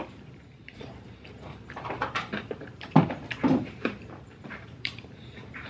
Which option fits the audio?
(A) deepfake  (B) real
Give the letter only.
A